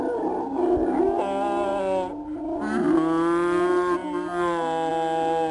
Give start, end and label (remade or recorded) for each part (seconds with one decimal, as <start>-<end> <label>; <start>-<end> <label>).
0.0-5.5 recorded

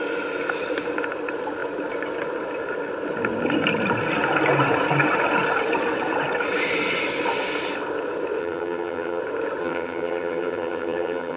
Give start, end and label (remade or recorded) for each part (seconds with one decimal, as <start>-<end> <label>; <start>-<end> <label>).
0.0-8.4 recorded; 8.4-9.2 remade; 9.2-9.6 recorded; 9.6-11.4 remade

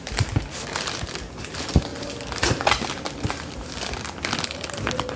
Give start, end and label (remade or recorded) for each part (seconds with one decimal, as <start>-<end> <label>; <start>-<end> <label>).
0.0-5.2 recorded

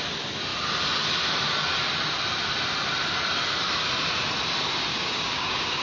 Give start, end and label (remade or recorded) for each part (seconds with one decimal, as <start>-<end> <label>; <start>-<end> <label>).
0.0-4.9 recorded; 4.9-5.8 remade

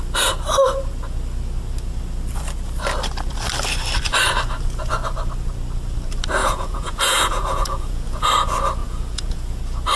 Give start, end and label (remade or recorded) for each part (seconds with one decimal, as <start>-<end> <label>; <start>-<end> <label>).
0.0-6.4 recorded; 6.4-8.3 remade; 8.3-8.8 recorded; 8.8-9.6 remade; 9.6-10.0 recorded